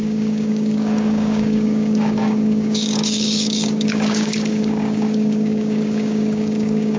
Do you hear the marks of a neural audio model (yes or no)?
yes